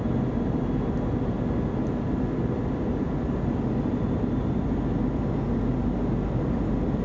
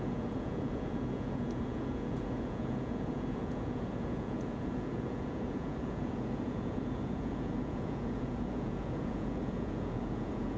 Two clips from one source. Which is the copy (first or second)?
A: second